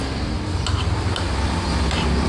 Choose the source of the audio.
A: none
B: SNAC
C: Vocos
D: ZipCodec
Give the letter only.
A